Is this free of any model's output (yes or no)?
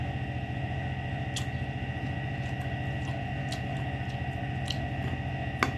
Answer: yes